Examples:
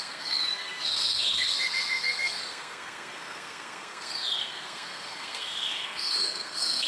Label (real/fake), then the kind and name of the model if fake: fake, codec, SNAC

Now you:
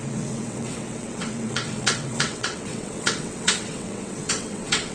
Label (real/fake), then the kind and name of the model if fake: fake, vocoder, WaveNeXt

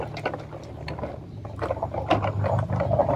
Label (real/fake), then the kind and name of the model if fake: real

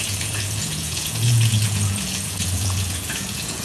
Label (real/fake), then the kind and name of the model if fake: fake, vocoder, Vocos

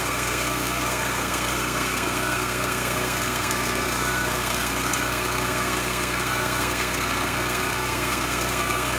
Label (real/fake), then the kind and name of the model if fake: fake, codec, SNAC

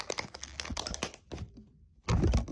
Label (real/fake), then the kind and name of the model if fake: real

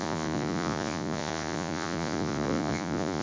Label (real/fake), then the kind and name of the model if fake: fake, vocoder, Vocos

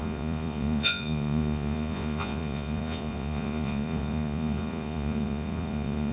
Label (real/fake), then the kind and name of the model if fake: fake, vocoder, Vocos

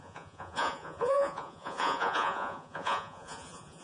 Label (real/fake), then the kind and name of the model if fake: fake, vocoder, Vocos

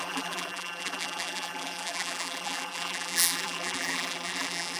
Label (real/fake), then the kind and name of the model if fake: fake, vocoder, BigVGAN v2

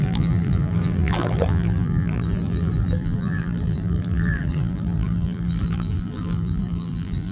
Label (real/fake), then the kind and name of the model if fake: fake, vocoder, BigVGAN v2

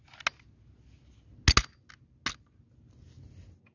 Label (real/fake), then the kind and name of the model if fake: real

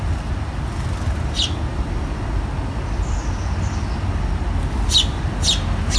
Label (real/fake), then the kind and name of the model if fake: real